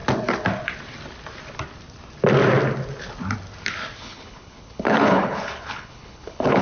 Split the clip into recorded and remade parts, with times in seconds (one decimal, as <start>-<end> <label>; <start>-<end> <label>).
0.0-4.0 recorded; 4.0-6.6 remade